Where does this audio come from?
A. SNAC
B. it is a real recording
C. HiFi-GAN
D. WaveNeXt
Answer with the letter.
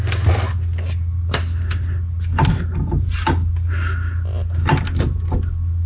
B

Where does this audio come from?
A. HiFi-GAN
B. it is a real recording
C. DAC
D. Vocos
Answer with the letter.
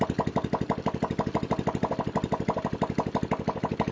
B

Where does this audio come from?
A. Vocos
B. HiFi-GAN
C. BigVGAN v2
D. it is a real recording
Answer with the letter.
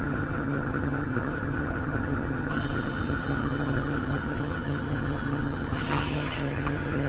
B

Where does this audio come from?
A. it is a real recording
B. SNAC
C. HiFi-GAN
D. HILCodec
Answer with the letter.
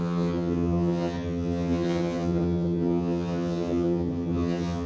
C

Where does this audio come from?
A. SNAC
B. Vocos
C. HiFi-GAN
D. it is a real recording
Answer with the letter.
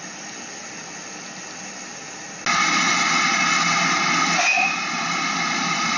D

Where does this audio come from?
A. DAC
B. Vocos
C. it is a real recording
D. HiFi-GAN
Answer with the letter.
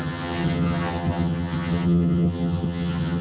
D